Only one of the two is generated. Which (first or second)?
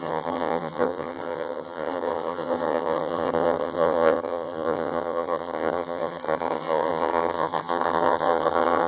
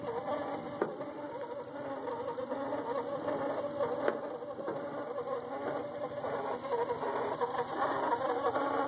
first